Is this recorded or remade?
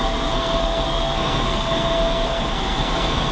remade